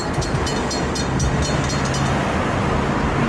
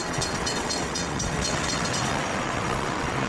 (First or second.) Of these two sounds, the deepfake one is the second